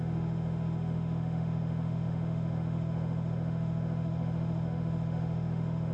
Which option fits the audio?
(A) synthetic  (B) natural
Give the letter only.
A